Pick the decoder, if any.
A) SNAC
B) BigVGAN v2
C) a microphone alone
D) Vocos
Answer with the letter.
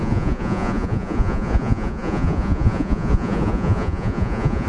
D